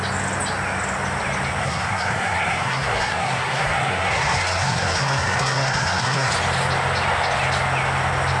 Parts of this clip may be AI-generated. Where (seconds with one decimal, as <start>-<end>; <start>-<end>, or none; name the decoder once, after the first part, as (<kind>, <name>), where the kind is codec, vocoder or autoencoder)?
1.6-6.3 (codec, SNAC)